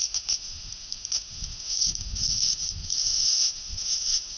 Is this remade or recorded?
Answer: remade